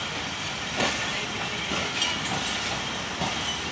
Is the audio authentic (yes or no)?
no